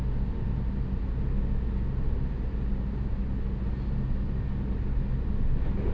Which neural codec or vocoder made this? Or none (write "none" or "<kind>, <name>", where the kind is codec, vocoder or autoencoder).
none